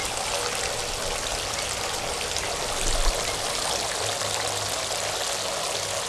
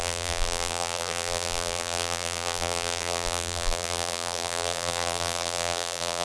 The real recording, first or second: first